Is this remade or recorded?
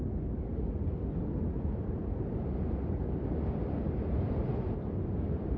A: remade